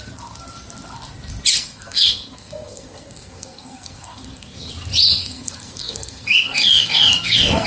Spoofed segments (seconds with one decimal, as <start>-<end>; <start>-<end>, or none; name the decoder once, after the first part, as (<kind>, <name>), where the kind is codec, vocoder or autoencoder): 1.5-4.7 (codec, SNAC); 5.2-7.7